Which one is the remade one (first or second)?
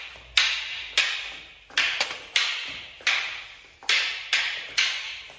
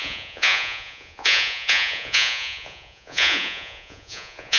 second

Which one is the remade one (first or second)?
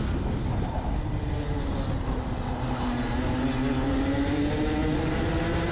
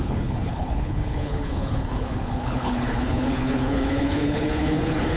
second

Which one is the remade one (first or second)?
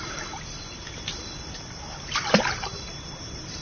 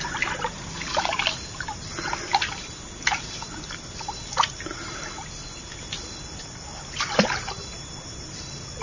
first